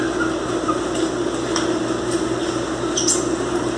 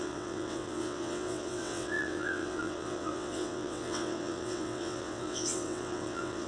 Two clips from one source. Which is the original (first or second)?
first